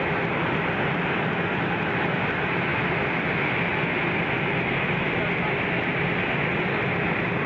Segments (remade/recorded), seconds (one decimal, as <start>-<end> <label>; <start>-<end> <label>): 0.0-7.5 recorded